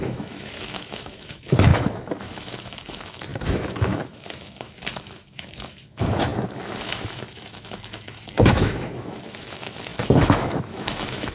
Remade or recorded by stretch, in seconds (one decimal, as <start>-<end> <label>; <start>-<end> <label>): 0.0-11.3 remade